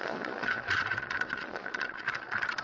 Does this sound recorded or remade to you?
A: remade